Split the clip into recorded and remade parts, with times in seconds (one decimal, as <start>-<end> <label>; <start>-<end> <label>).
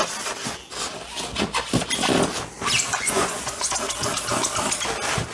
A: 0.0-2.9 recorded; 2.9-3.7 remade; 3.7-5.3 recorded